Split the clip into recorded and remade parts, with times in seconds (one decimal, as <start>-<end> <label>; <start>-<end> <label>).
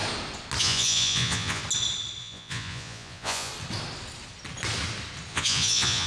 0.0-0.6 recorded; 0.6-1.6 remade; 1.6-2.2 recorded; 2.2-3.5 remade; 3.5-5.3 recorded; 5.3-6.1 remade